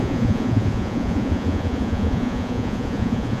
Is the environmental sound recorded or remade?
remade